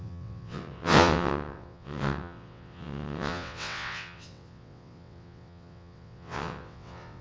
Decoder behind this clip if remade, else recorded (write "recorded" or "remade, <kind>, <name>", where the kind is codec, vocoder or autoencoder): remade, vocoder, WaveNeXt